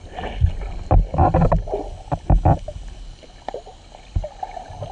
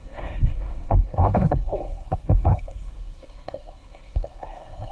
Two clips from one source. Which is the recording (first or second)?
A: first